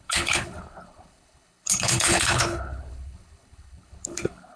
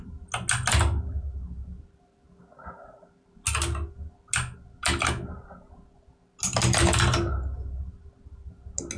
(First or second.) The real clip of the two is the second